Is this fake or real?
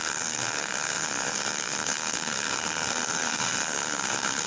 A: fake